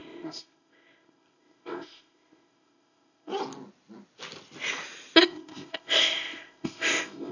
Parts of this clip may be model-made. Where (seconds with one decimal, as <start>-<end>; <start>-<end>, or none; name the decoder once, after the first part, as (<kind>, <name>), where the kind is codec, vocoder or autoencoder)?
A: 0.0-3.3 (codec, ZipCodec); 5.2-7.3